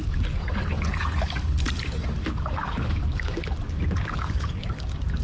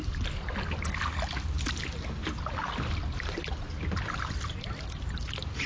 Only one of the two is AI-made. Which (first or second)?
first